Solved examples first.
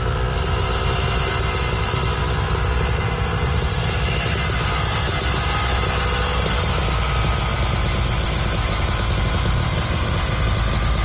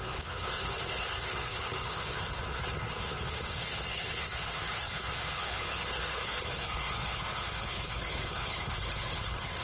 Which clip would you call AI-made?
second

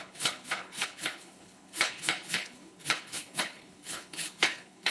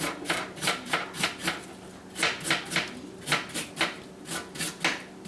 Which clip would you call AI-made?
first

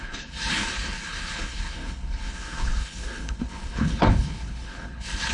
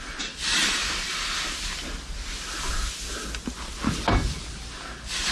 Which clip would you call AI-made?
first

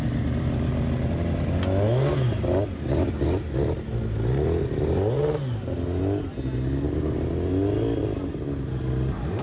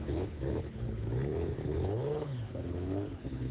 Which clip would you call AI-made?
second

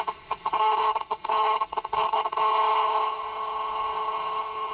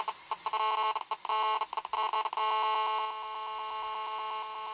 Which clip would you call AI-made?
first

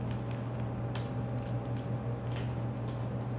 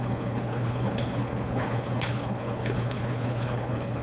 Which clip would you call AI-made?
second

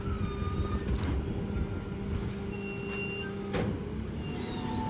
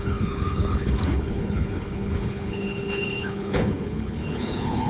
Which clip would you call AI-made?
second